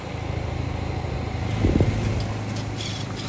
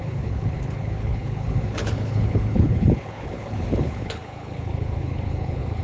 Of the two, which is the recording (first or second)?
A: first